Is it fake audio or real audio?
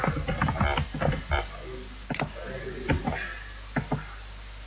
real